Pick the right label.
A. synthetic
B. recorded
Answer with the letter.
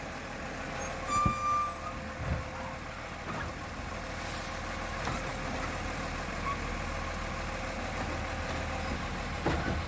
B